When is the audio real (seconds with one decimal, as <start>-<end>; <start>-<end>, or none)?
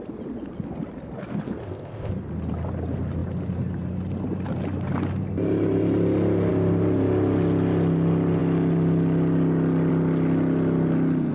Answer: 0.0-1.6; 2.1-11.3